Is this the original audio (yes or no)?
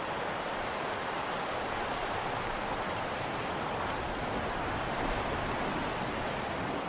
yes